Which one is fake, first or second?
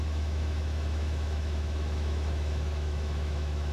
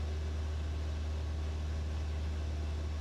first